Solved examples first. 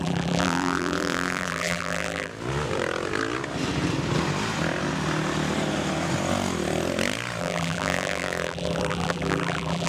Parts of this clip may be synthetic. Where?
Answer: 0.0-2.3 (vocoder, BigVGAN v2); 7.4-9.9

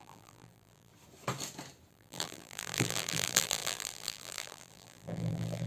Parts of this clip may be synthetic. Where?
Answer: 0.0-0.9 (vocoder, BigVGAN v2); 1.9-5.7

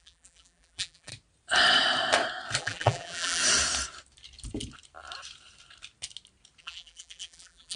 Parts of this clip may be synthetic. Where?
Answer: 0.0-1.1 (vocoder, BigVGAN v2); 2.6-3.4; 6.6-7.8

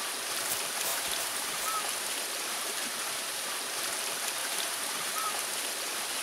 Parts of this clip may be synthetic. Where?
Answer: 0.9-1.6 (vocoder, BigVGAN v2); 2.5-3.5; 4.4-5.4